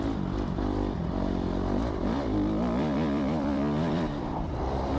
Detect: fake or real fake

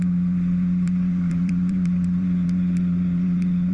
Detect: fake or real fake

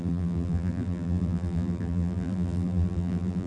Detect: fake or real fake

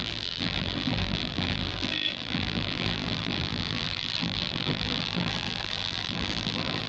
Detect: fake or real fake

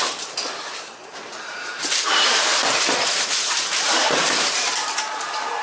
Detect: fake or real fake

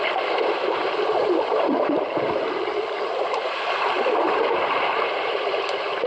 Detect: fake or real fake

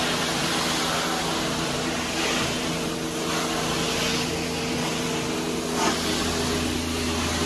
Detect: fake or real real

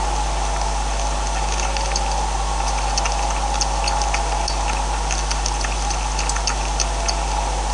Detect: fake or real real